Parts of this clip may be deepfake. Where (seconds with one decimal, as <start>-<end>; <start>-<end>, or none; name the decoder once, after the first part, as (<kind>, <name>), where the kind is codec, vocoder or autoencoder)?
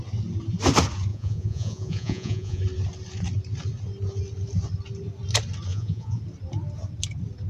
1.1-2.6 (vocoder, Vocos); 5.7-6.2